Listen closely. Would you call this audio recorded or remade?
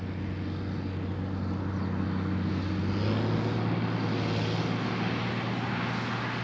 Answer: recorded